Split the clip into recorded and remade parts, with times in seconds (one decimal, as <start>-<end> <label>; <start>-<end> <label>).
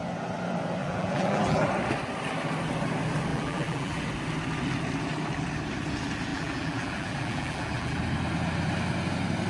0.0-0.8 recorded; 0.8-1.7 remade; 1.7-3.3 recorded; 3.3-4.0 remade; 4.0-6.3 recorded; 6.3-8.0 remade; 8.0-9.5 recorded